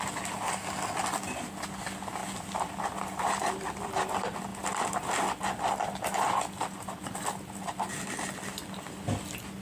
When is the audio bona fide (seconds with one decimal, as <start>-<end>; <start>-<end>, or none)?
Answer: 0.0-2.2; 3.9-9.6